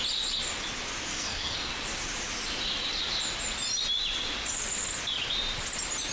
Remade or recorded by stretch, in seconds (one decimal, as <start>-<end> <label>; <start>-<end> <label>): 0.0-1.1 recorded; 1.1-1.7 remade; 1.7-6.1 recorded

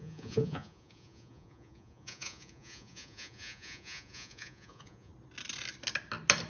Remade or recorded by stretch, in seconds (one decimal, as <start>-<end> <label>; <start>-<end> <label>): 0.0-5.1 remade; 5.1-6.5 recorded

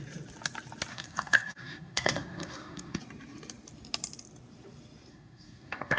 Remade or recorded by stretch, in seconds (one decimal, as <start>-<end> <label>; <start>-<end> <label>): 0.0-0.9 recorded; 0.9-3.0 remade; 3.0-5.1 recorded; 5.1-6.0 remade